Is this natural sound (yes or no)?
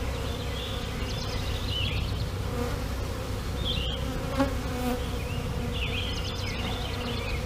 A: yes